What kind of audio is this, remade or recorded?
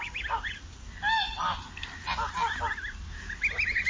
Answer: recorded